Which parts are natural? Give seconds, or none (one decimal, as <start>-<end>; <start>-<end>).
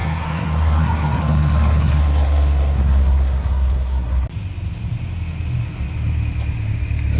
4.3-7.2